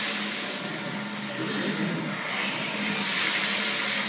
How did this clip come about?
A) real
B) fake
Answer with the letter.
A